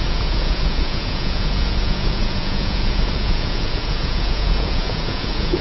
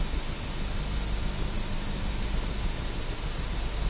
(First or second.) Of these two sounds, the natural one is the second